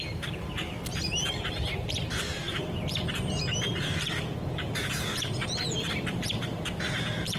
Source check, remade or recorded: remade